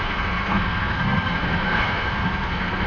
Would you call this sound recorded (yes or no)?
no